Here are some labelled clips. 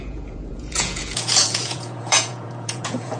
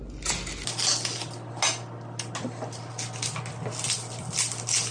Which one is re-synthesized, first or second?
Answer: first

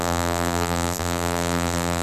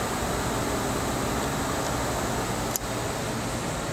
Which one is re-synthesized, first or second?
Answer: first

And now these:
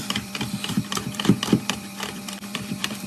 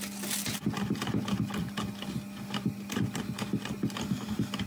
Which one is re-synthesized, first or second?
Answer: first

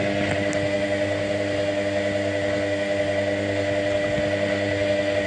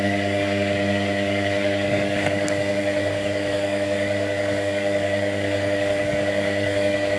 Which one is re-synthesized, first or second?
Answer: second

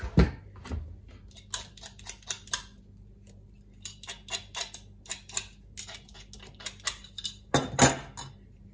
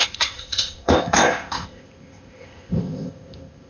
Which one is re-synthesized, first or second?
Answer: second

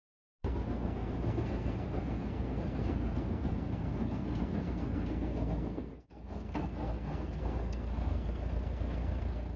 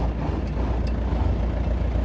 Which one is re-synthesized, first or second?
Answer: first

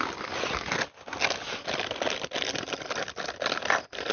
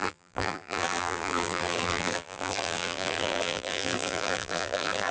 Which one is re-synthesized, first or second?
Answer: second